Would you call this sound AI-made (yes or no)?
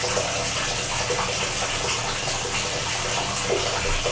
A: no